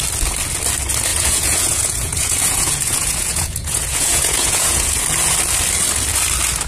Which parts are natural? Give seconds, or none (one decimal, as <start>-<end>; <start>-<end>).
0.0-1.1; 5.0-6.7